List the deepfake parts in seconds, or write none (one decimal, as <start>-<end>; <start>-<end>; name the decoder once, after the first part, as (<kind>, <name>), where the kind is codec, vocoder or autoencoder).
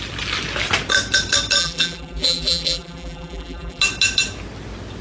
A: 1.6-3.8 (vocoder, BigVGAN v2)